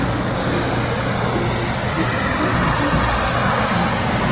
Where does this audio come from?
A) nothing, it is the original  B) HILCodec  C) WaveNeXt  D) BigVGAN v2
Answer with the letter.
A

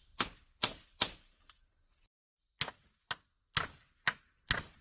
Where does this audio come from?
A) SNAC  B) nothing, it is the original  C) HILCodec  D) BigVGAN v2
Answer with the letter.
B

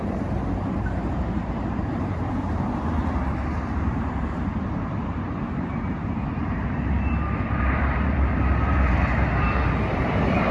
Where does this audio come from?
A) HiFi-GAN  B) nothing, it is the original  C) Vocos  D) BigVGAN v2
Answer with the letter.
D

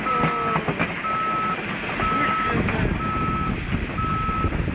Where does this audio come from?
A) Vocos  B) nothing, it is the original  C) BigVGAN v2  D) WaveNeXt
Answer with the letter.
B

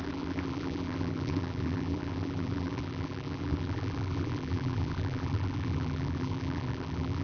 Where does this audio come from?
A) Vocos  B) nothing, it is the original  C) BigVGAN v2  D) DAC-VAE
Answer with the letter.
C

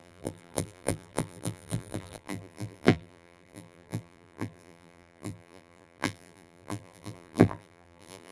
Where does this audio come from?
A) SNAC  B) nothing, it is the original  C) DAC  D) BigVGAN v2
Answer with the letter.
D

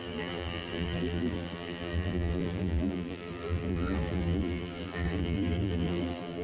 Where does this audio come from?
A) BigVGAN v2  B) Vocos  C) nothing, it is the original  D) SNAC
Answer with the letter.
A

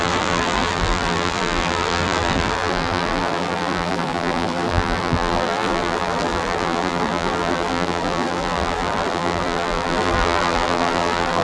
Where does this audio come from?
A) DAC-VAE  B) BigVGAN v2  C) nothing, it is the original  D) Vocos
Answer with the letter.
B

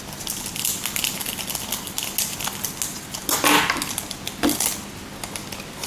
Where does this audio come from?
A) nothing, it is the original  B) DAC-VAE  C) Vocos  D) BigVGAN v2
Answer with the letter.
A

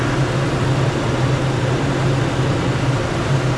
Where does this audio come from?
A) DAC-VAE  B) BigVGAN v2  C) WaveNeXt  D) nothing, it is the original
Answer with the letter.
D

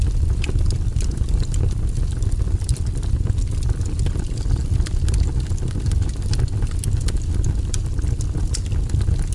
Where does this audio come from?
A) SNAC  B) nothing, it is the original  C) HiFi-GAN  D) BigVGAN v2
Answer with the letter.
B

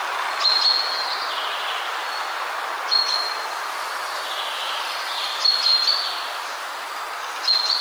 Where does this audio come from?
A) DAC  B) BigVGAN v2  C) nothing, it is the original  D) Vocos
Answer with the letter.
C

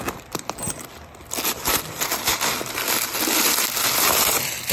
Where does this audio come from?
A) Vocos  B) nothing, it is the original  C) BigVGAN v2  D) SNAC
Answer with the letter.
B